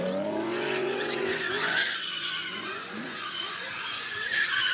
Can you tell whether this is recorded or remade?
remade